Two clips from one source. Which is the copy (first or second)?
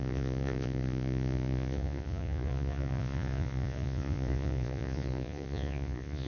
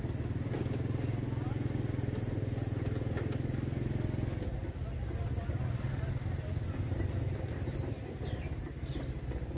first